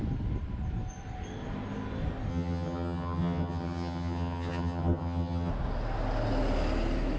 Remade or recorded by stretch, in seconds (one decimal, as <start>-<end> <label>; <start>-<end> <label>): 0.0-2.3 recorded; 2.3-5.5 remade; 5.5-7.2 recorded

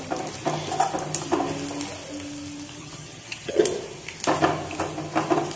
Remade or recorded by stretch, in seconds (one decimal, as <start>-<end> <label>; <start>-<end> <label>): 0.0-2.8 recorded; 2.8-3.6 remade; 3.6-5.6 recorded

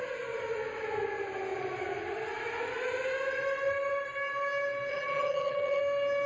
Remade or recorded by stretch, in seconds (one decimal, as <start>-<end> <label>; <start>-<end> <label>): 0.0-4.9 recorded; 4.9-5.8 remade; 5.8-6.3 recorded

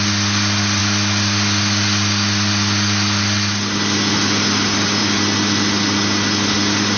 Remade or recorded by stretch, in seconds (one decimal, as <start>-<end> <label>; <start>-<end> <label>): 0.0-7.0 recorded